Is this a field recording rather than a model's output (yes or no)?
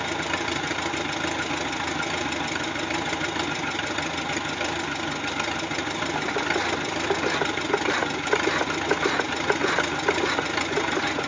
yes